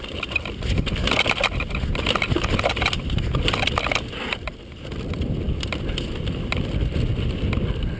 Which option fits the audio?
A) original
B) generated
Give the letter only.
A